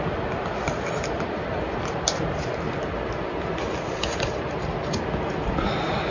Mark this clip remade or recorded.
recorded